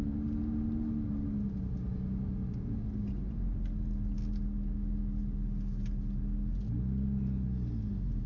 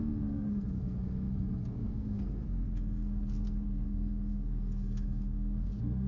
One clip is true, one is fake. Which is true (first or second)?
first